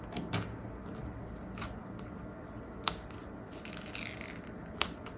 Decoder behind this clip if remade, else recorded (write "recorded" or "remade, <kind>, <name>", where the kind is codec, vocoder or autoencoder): recorded